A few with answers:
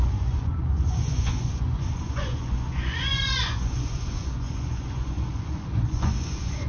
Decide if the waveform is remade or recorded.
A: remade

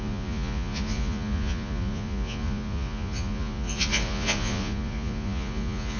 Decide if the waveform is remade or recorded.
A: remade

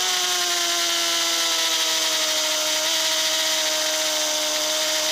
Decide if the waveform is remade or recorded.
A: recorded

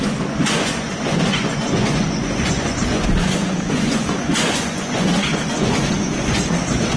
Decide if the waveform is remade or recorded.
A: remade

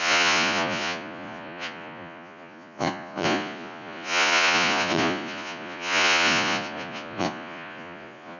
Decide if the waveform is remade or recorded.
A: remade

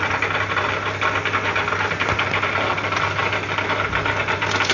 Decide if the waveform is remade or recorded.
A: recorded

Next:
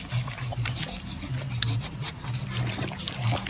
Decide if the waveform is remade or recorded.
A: recorded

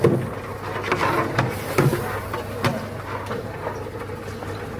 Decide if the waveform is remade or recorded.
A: recorded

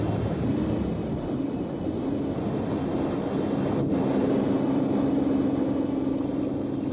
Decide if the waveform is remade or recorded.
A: recorded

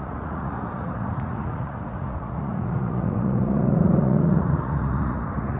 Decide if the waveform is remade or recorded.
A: remade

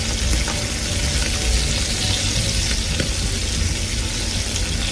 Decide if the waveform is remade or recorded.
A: recorded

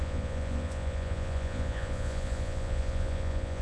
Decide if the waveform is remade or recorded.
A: remade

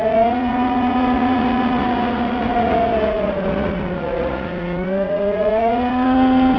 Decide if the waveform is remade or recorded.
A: remade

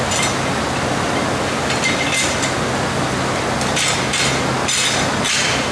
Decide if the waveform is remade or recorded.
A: recorded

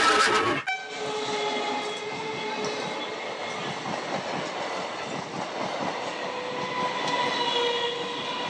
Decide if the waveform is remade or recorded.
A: recorded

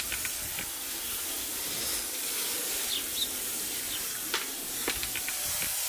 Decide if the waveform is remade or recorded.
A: recorded